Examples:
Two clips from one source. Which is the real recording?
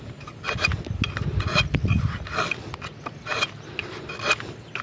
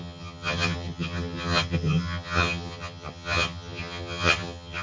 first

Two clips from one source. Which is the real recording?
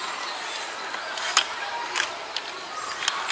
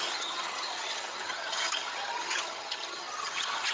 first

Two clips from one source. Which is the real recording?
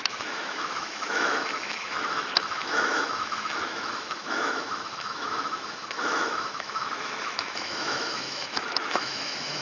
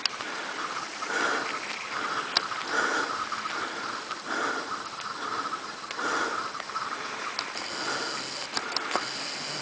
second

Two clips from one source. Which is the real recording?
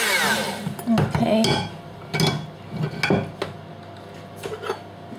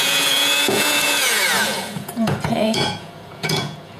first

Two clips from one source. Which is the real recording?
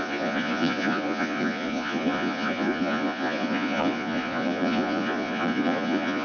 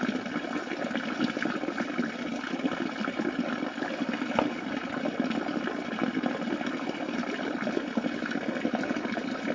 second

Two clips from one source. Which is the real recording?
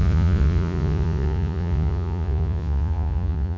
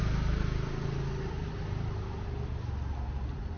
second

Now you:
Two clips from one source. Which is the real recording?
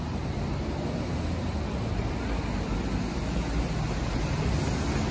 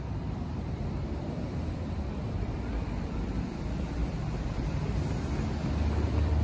first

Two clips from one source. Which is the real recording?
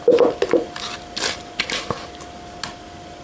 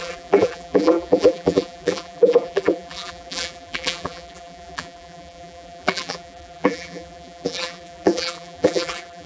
first